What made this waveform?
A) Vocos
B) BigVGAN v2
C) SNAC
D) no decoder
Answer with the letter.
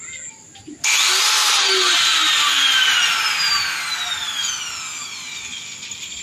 D